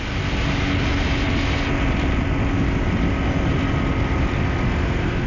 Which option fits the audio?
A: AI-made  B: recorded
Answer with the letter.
B